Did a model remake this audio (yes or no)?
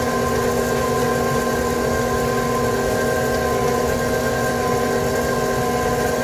no